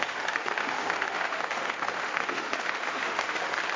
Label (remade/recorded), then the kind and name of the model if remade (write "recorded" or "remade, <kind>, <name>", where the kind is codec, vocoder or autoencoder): remade, autoencoder, DAC-VAE